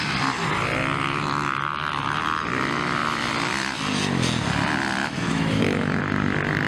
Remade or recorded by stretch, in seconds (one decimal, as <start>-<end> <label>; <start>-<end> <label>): 0.0-5.0 recorded; 5.0-6.0 remade; 6.0-6.7 recorded